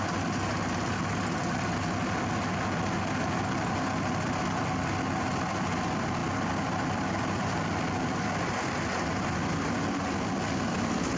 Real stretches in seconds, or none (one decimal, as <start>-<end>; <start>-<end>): 0.0-11.2